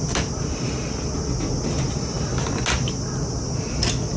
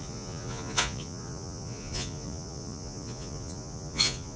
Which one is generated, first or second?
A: second